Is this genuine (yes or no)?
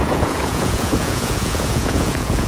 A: no